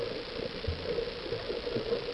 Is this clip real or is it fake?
real